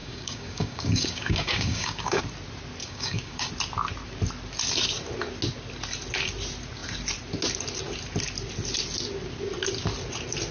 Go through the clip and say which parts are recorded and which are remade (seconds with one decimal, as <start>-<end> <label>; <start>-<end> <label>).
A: 0.0-2.2 remade; 2.2-2.8 recorded; 2.8-3.5 remade; 3.5-10.5 recorded